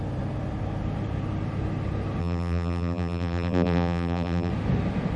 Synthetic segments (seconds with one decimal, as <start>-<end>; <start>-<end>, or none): 2.2-4.5